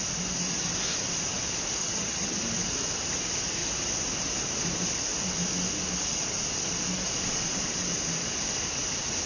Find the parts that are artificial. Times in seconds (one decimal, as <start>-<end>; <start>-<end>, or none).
1.8-2.4